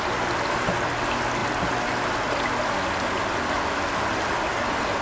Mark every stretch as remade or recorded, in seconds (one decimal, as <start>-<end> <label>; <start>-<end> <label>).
0.0-5.0 recorded